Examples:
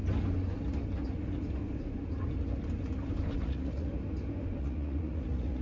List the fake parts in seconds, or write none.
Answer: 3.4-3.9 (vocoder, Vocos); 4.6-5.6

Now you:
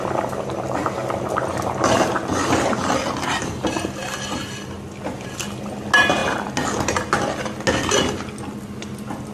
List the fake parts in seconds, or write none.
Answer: none